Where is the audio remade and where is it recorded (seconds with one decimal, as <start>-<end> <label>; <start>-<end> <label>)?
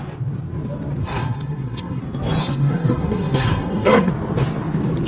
0.0-1.0 recorded; 1.0-2.0 remade; 2.0-2.4 recorded; 2.4-4.1 remade; 4.1-5.1 recorded